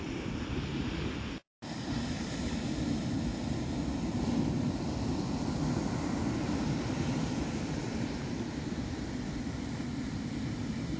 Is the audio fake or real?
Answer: real